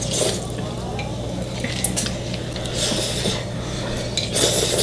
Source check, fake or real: real